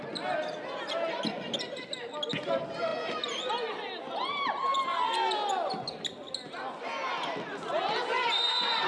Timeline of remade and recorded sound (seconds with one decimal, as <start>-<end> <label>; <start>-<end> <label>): 0.0-8.9 recorded